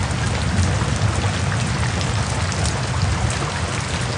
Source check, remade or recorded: recorded